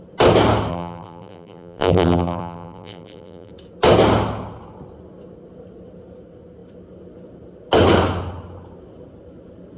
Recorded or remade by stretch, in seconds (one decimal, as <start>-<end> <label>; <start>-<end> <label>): 0.0-0.7 recorded; 0.7-3.5 remade; 3.5-9.8 recorded